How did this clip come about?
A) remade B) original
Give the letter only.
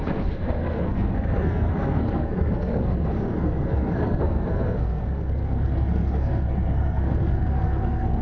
A